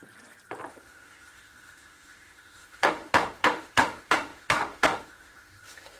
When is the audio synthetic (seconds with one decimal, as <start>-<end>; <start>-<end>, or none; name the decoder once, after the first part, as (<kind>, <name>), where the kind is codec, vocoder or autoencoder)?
0.7-6.0 (autoencoder, DAC-VAE)

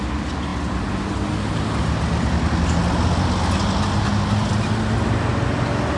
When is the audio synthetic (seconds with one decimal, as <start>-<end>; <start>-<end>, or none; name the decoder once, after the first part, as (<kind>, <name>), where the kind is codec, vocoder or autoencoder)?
none

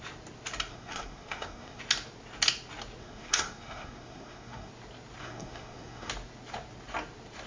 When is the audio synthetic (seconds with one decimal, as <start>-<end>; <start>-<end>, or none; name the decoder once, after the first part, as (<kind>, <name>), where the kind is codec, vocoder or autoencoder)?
0.7-1.8 (codec, SNAC); 3.0-4.7; 5.2-6.1

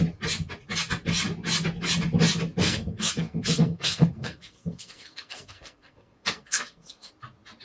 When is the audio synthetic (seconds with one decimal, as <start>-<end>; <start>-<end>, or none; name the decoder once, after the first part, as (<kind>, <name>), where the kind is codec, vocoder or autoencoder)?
2.6-7.1 (codec, SNAC)

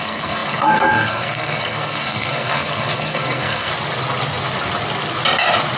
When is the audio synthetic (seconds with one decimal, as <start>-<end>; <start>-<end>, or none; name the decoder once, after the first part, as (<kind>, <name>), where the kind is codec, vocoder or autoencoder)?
0.0-3.7 (codec, SNAC)

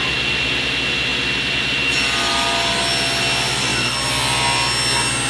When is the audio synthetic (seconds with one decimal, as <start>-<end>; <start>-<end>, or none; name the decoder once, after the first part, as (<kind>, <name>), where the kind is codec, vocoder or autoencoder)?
none

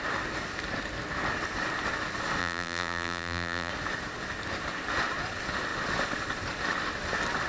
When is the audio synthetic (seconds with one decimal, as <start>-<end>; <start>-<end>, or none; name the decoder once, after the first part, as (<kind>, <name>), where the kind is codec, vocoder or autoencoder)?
2.4-3.7 (vocoder, BigVGAN v2)